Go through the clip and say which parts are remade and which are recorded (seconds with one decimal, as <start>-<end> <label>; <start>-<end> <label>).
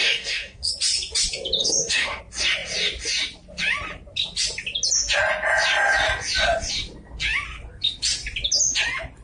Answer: 0.0-0.7 remade; 0.7-1.6 recorded; 1.6-2.2 remade; 2.2-9.2 recorded